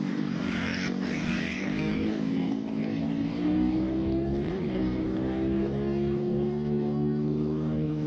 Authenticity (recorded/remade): remade